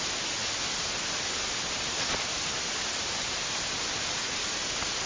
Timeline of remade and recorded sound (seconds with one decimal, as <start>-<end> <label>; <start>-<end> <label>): 0.0-5.1 recorded